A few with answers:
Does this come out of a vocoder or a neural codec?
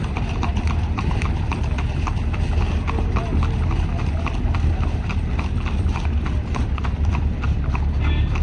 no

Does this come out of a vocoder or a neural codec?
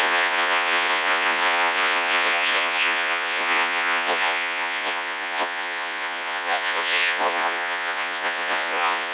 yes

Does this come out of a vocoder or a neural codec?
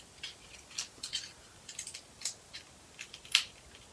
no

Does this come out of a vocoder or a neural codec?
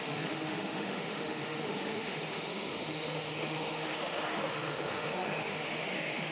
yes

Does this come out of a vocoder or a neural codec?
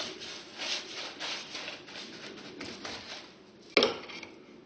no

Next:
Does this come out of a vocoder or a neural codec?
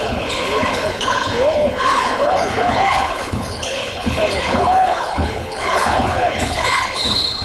yes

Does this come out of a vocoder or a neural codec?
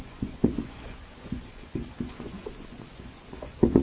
yes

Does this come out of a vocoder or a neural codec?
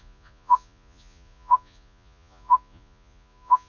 yes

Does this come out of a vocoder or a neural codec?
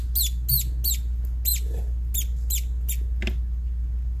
no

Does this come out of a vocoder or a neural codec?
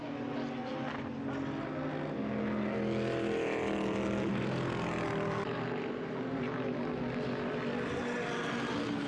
no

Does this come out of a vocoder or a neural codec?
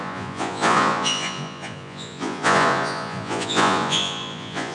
yes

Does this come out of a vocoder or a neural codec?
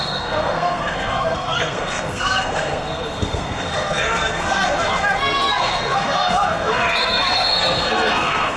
yes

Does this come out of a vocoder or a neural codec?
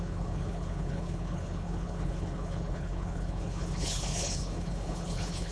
yes